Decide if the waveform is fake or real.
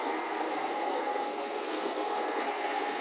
fake